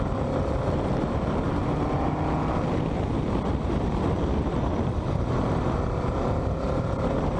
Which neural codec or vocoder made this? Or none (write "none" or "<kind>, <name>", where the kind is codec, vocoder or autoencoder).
none